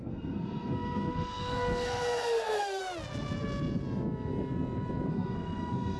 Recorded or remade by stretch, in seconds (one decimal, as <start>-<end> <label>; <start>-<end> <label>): 0.0-2.8 remade; 2.8-5.1 recorded; 5.1-6.0 remade